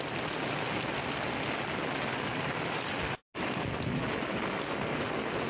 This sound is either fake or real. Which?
real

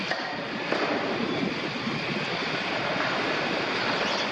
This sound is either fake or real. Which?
real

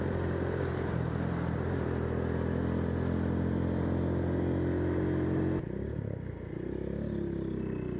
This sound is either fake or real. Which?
real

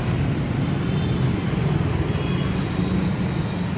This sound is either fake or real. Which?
real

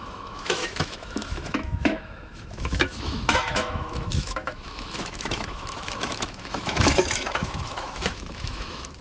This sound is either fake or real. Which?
fake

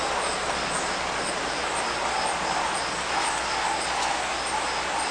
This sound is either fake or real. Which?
real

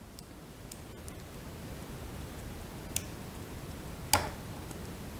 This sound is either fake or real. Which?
real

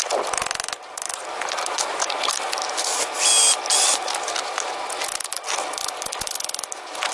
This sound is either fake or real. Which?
real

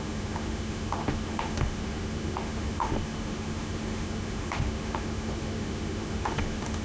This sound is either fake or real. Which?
fake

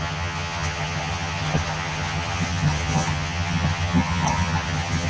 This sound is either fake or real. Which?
fake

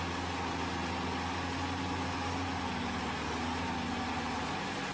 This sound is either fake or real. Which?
real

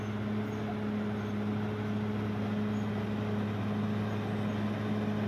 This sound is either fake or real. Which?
real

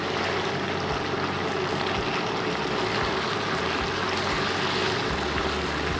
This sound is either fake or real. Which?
real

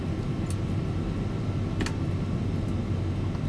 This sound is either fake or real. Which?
real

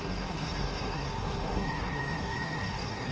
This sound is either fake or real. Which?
fake